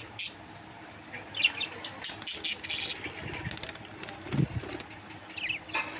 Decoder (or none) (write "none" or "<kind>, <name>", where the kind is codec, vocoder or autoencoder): none